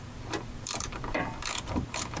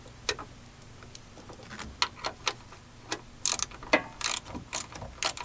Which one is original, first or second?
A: second